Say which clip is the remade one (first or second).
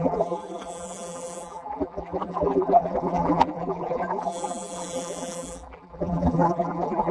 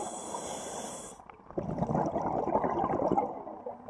first